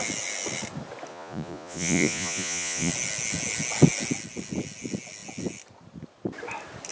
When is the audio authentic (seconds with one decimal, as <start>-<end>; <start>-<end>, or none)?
0.0-1.1; 2.9-6.9